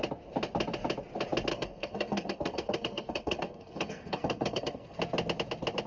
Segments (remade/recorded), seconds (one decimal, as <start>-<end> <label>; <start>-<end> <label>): 0.0-1.5 recorded; 1.5-5.0 remade; 5.0-5.9 recorded